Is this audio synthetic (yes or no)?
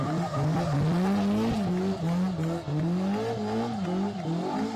no